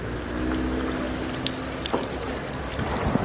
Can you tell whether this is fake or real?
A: real